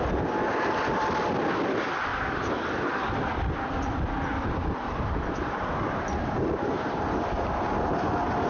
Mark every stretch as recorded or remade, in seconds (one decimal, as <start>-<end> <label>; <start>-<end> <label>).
0.0-8.5 recorded